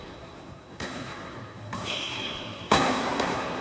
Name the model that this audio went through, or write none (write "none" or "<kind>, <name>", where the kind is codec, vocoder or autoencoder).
codec, SNAC